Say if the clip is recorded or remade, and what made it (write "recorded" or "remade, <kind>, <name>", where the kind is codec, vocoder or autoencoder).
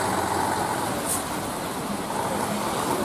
recorded